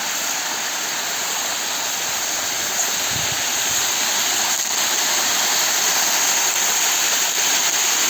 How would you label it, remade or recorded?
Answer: recorded